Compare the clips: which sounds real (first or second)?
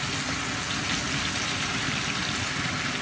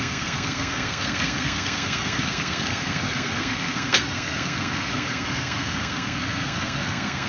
first